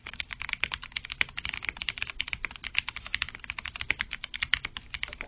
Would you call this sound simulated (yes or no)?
no